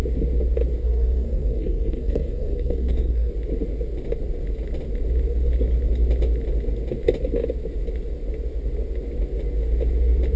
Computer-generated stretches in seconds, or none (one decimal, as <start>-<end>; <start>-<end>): 0.8-3.3